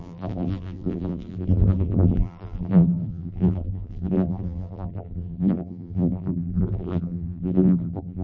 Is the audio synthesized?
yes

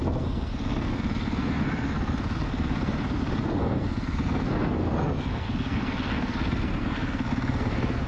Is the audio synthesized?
yes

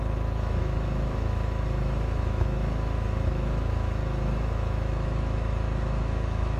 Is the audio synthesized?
yes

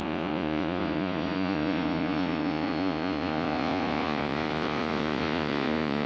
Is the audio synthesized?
yes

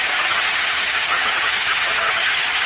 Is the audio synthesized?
yes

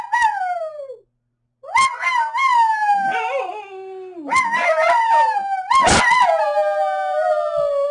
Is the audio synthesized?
no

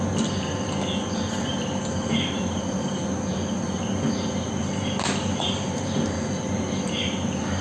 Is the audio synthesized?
no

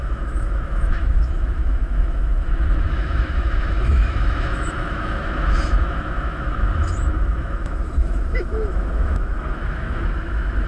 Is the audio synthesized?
yes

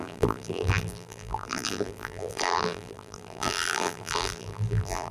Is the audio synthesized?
yes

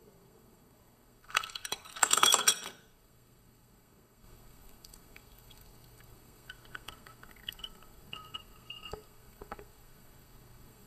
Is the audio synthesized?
yes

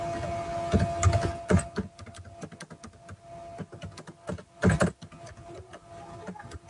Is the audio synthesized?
no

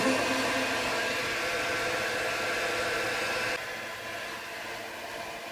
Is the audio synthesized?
no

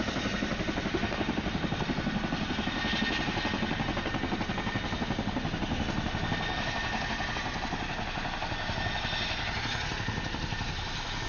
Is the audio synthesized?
no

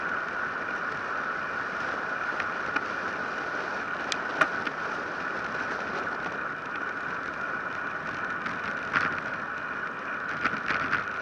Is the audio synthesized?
no